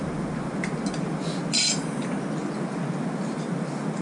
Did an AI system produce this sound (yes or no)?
no